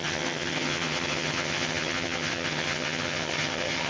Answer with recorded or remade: remade